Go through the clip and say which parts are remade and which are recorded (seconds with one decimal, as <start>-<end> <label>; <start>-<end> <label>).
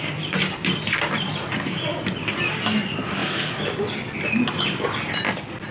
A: 0.0-5.7 recorded